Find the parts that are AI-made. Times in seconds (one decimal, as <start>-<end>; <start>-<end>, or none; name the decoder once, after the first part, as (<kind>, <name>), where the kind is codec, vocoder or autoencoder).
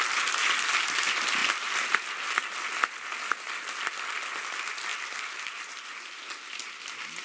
none